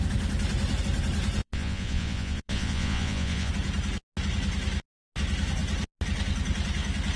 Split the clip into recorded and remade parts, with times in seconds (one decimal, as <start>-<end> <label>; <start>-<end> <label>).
0.0-1.4 recorded; 1.4-3.5 remade; 3.5-7.2 recorded